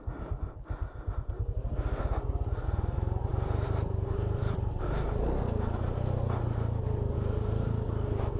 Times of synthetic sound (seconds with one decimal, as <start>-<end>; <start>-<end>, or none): 7.1-8.4